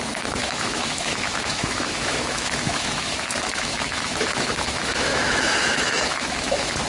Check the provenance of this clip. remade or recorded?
remade